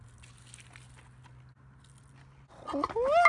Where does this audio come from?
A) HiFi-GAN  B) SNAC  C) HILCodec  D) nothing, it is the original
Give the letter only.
D